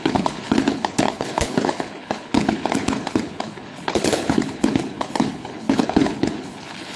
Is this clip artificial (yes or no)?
yes